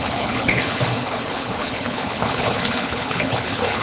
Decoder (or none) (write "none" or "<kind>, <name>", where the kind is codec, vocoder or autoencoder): codec, HILCodec